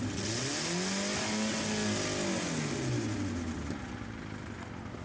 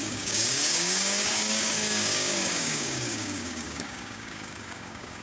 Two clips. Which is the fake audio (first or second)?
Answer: second